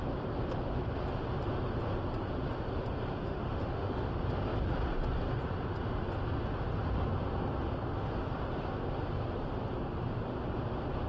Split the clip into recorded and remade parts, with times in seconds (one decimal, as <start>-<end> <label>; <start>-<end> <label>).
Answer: 0.0-3.2 recorded; 3.2-4.1 remade; 4.1-11.1 recorded